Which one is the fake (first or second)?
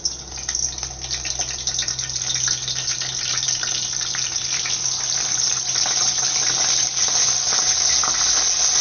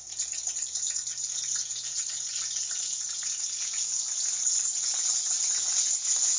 second